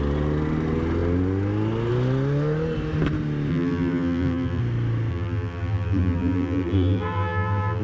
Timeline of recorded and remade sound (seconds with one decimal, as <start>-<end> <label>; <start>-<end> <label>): 0.0-3.5 recorded; 3.5-4.6 remade; 4.6-5.1 recorded; 5.1-7.8 remade